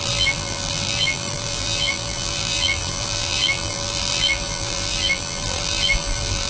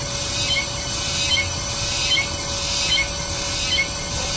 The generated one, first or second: first